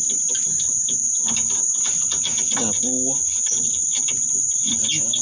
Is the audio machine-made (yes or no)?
no